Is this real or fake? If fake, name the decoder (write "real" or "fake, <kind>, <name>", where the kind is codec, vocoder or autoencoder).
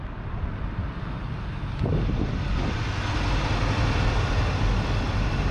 real